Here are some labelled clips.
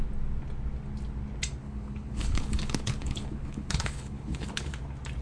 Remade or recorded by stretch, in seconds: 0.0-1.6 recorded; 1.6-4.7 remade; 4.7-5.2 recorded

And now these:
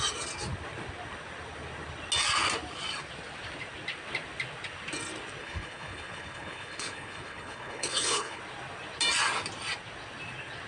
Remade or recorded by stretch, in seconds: 0.0-5.4 recorded; 5.4-8.4 remade; 8.4-10.7 recorded

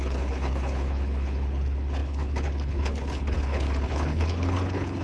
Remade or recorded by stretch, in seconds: 0.0-5.0 remade

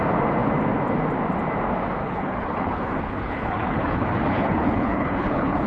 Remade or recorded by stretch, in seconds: 0.0-2.0 recorded; 2.0-5.7 remade